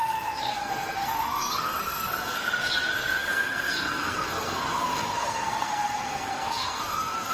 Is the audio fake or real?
fake